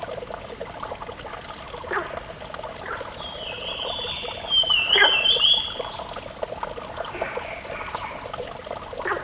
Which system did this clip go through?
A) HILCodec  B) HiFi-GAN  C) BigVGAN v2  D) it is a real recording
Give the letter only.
D